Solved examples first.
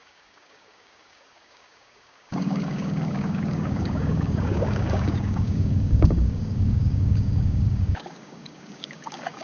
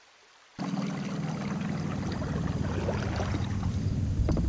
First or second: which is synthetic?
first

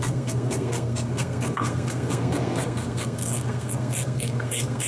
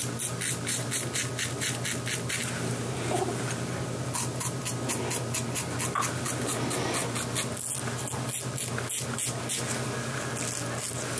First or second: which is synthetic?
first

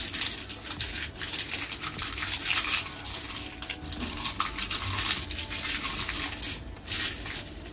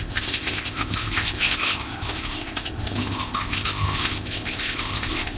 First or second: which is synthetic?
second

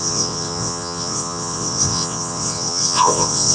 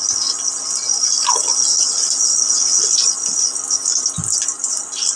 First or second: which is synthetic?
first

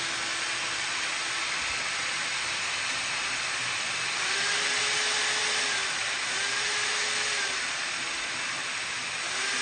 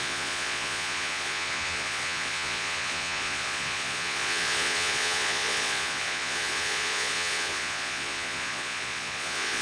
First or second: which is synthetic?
second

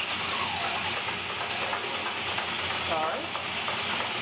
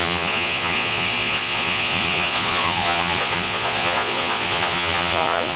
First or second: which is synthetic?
second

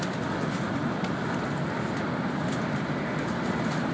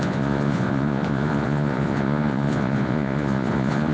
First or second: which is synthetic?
second